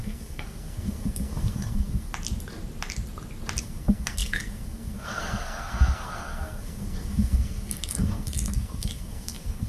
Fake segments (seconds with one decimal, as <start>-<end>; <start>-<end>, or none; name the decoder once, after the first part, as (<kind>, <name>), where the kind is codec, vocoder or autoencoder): 0.0-2.1 (codec, SNAC); 3.6-9.7